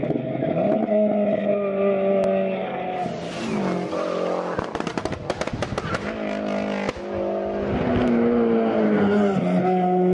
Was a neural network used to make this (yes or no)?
no